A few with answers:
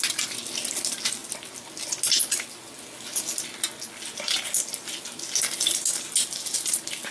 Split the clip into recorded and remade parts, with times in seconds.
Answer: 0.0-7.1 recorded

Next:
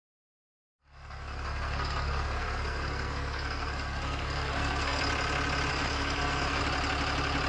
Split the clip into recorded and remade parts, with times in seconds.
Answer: 0.0-0.5 recorded; 0.5-5.0 remade; 5.0-5.7 recorded; 5.7-6.6 remade; 6.6-7.5 recorded